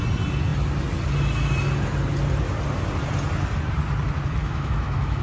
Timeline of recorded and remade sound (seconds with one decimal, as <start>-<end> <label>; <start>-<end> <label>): 0.0-4.4 recorded; 4.4-5.2 remade